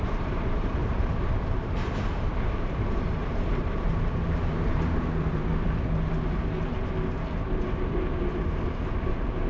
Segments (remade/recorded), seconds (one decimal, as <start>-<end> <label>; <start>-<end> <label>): 0.0-5.5 remade; 5.5-9.1 recorded; 9.1-9.5 remade